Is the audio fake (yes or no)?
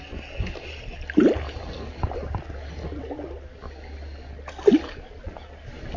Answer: no